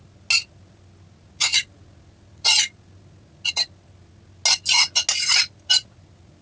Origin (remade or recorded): recorded